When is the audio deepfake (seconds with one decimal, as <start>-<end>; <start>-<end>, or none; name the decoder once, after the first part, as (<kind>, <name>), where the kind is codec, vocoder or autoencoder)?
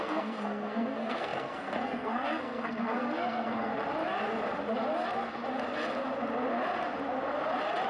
0.0-3.7 (codec, SNAC)